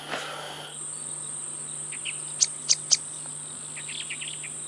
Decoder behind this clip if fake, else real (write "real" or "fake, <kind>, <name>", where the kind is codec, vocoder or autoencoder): real